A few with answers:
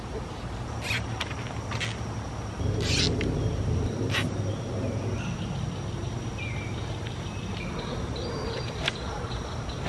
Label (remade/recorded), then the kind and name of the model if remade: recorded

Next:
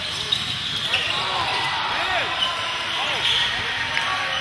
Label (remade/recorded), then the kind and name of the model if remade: recorded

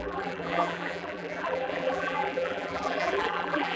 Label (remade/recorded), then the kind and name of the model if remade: remade, vocoder, BigVGAN v2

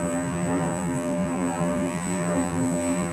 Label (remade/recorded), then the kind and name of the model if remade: remade, vocoder, BigVGAN v2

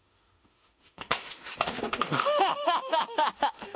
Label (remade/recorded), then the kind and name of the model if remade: remade, autoencoder, DAC-VAE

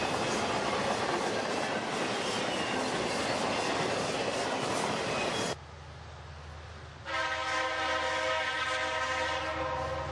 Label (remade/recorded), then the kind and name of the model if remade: recorded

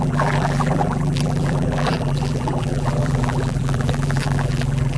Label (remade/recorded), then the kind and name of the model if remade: remade, vocoder, BigVGAN v2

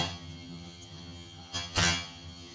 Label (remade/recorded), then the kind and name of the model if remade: remade, vocoder, HiFi-GAN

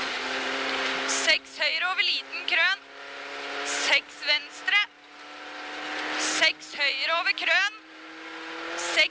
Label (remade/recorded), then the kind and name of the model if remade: recorded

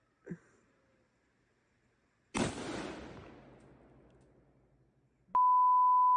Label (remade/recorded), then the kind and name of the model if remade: recorded